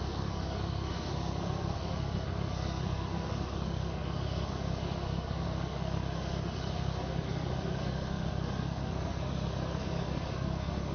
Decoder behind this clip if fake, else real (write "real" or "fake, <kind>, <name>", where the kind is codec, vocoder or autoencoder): fake, codec, SNAC